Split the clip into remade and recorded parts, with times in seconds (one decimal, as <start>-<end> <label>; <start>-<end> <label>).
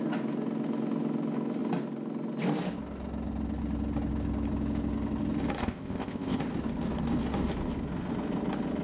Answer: 0.0-5.6 recorded; 5.6-6.4 remade; 6.4-8.8 recorded